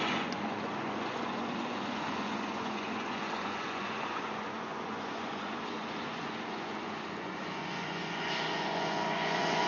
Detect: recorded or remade remade